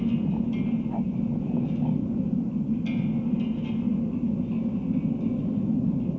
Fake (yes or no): no